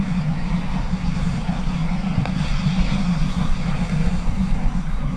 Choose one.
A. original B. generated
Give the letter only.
B